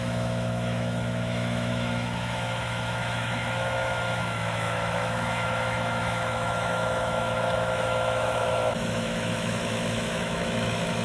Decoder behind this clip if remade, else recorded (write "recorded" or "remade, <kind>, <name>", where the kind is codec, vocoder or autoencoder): remade, autoencoder, DAC-VAE